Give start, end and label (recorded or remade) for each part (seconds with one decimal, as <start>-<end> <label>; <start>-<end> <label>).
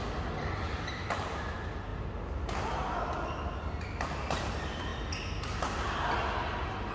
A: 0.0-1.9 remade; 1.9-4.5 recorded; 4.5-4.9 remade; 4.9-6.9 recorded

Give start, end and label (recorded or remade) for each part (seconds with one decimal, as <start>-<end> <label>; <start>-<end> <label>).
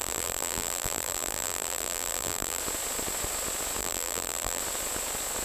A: 0.0-2.6 remade; 2.6-3.8 recorded; 3.8-4.6 remade; 4.6-5.4 recorded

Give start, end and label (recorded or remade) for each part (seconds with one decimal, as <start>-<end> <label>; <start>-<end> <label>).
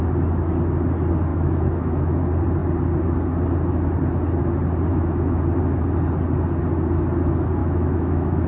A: 0.0-1.3 recorded; 1.3-2.2 remade; 2.2-4.9 recorded; 4.9-5.4 remade; 5.4-7.6 recorded; 7.6-8.5 remade